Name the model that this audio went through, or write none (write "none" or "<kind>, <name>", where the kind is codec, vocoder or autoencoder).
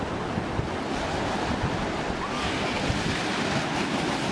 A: none